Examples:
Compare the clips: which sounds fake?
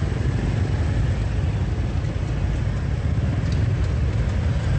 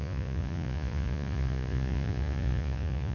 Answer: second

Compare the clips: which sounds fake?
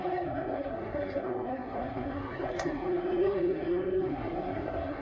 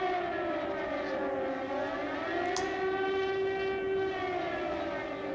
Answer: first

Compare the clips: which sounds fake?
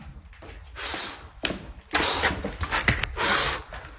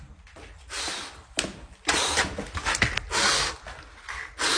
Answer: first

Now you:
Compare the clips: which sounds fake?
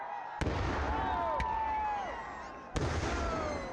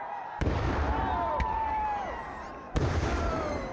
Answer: second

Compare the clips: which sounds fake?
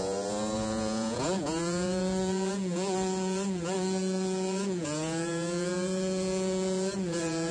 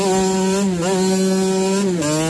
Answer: first